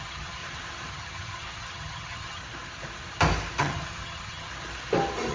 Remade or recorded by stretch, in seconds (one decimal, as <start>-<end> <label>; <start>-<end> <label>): 0.0-0.4 remade; 0.4-0.9 recorded; 0.9-2.4 remade; 2.4-3.6 recorded; 3.6-4.5 remade; 4.5-5.3 recorded